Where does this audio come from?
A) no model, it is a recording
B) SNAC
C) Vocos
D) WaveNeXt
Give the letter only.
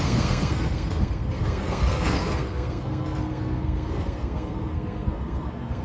B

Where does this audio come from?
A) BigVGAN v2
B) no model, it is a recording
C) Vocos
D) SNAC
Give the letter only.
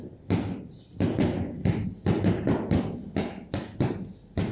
B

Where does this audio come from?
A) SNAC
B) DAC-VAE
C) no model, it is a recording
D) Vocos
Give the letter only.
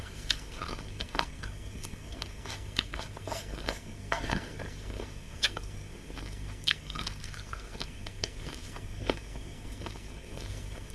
A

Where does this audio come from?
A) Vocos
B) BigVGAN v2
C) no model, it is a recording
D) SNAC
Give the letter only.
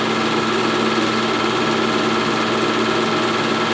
C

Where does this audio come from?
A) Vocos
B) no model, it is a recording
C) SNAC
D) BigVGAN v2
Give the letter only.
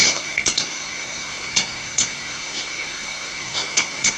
C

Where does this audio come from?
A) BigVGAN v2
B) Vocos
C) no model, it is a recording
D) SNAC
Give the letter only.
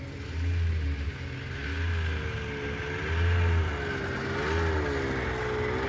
C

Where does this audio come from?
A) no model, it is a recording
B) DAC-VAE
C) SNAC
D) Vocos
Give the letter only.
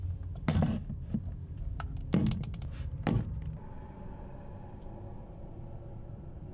A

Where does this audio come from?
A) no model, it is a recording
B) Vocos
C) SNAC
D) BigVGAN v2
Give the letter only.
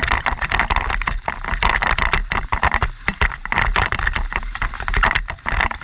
A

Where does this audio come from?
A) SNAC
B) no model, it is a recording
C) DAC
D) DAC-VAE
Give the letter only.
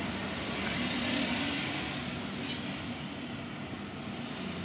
B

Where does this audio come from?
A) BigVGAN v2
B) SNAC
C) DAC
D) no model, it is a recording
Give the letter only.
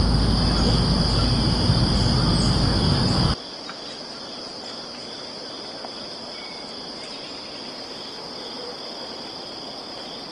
D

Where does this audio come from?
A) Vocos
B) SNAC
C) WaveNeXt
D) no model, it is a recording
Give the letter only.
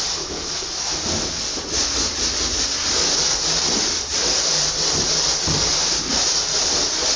D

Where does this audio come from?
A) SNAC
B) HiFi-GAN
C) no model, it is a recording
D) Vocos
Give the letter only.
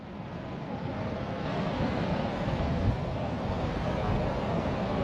A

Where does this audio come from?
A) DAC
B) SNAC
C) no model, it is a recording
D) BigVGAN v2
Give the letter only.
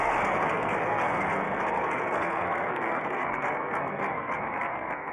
B